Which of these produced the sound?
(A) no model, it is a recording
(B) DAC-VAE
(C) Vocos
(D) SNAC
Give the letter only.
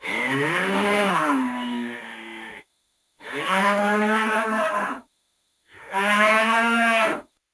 B